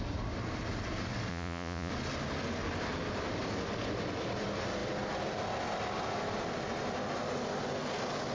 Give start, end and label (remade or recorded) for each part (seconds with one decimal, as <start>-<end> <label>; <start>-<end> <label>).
0.0-1.3 recorded; 1.3-1.9 remade; 1.9-8.3 recorded